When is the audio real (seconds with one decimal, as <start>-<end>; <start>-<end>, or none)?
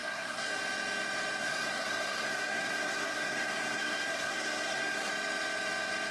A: 0.5-1.4; 5.1-6.1